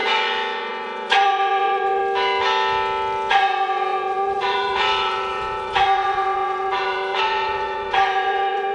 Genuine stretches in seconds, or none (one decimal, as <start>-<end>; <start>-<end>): 2.0-3.3